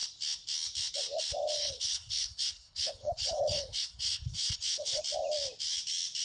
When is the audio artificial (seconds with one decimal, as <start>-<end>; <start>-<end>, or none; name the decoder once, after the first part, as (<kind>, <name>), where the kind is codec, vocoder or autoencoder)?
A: 1.6-5.0 (codec, HILCodec)